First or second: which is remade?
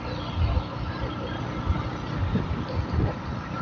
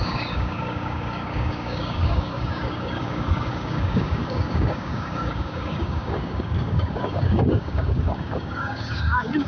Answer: second